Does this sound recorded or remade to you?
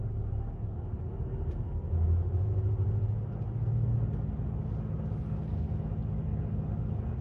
recorded